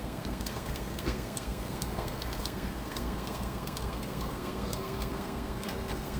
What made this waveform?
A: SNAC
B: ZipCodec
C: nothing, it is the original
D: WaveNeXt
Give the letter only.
A